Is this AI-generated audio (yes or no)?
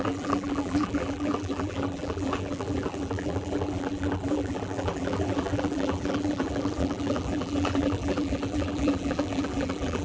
yes